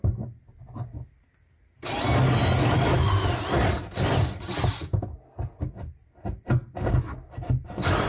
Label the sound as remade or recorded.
recorded